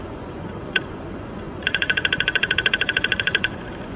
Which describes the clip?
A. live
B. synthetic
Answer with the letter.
B